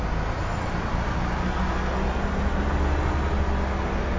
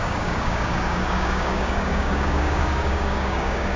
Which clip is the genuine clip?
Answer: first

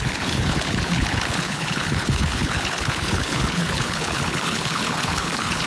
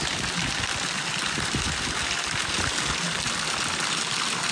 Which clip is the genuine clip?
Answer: second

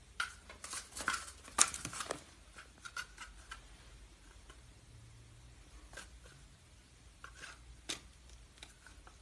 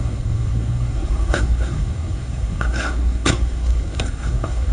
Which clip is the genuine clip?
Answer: first